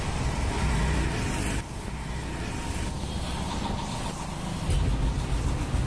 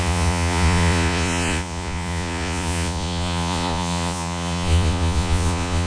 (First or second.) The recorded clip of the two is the first